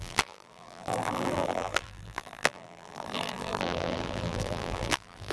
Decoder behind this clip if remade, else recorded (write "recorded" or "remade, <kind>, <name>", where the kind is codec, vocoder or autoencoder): remade, vocoder, BigVGAN v2